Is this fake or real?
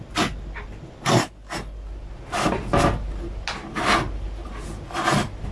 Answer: real